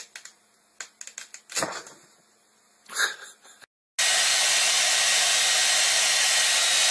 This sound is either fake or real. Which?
real